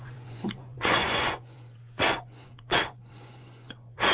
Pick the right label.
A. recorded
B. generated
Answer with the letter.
B